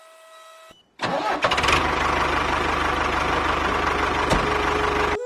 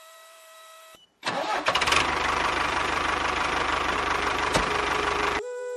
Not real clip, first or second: second